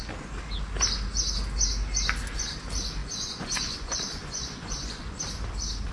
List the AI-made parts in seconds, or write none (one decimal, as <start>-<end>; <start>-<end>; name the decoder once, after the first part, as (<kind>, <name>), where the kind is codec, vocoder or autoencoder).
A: 3.0-5.2 (vocoder, Vocos)